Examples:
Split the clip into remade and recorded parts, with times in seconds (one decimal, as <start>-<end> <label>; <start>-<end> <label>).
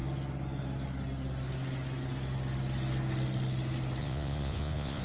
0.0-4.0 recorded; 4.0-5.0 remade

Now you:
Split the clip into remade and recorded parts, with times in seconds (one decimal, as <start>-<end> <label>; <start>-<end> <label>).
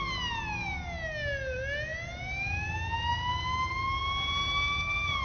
0.0-5.2 recorded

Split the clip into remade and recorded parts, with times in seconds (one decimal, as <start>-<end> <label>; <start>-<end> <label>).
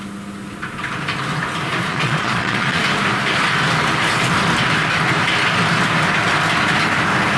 0.0-1.9 recorded; 1.9-2.8 remade; 2.8-7.4 recorded